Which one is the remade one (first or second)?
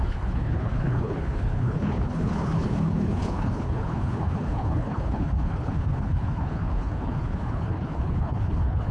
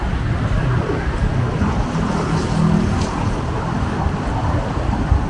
first